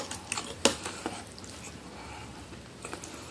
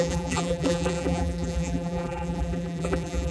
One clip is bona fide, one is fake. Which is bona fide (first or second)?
first